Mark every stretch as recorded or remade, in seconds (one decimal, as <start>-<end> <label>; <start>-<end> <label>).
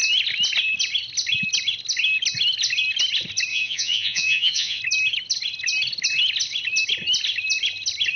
0.0-3.5 recorded; 3.5-4.8 remade; 4.8-8.2 recorded